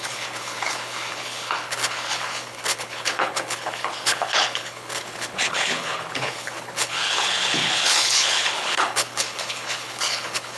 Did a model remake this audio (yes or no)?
yes